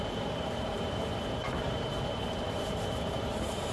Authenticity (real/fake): fake